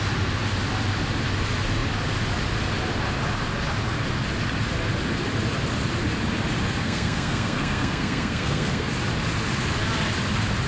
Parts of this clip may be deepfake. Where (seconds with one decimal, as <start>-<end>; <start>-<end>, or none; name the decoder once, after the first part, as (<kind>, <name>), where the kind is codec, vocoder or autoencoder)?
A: 6.8-8.9 (codec, SNAC)